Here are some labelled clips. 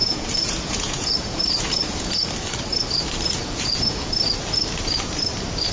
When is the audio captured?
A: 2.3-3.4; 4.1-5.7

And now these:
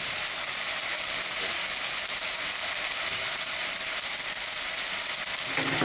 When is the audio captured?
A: 0.0-5.8

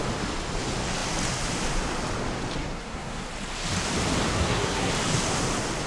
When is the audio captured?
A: 0.0-2.6; 3.3-4.3; 4.9-5.9

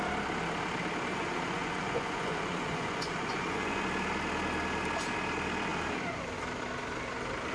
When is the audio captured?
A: 0.0-1.1; 3.8-7.5